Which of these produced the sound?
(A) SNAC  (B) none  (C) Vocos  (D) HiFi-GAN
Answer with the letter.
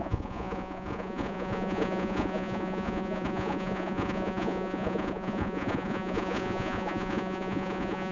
C